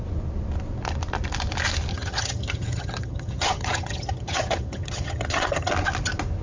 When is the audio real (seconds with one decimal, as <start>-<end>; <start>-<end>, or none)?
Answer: 0.0-1.9; 5.7-6.4